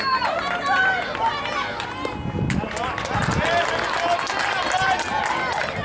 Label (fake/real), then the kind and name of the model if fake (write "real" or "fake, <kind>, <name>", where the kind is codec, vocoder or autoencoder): real